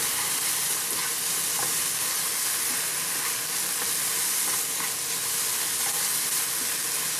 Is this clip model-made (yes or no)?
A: no